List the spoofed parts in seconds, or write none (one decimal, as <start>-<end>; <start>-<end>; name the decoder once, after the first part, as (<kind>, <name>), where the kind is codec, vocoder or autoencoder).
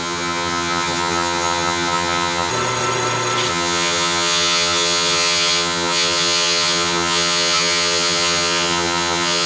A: 0.0-2.5 (vocoder, HiFi-GAN); 3.5-9.5